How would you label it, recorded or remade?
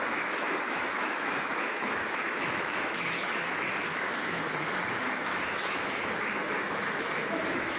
remade